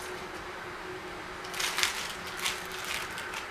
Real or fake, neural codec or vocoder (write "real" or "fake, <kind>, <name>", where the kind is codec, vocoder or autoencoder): real